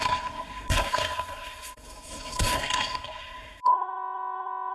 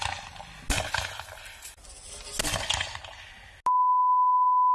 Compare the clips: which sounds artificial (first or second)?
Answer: first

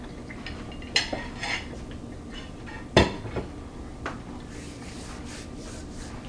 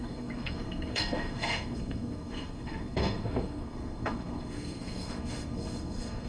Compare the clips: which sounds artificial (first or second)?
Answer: second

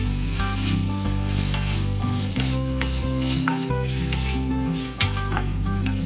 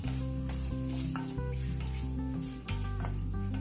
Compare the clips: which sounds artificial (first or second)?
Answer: first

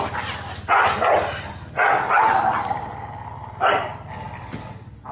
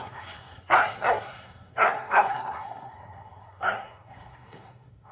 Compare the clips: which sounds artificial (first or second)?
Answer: second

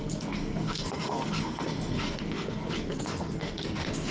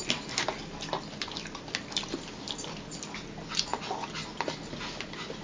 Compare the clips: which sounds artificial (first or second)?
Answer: first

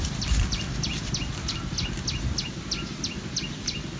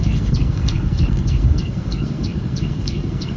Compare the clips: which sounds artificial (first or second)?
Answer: second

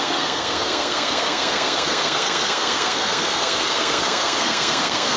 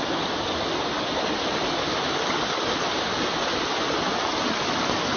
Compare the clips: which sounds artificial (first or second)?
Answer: first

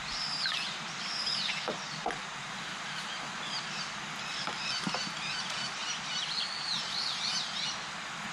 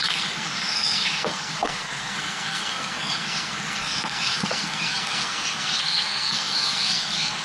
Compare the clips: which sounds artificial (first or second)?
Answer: second